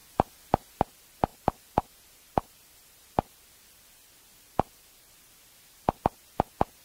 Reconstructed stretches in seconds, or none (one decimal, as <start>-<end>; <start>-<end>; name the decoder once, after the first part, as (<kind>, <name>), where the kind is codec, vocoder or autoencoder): 0.0-0.8 (vocoder, BigVGAN v2); 1.3-5.4